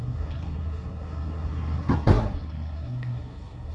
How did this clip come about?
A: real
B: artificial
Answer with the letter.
B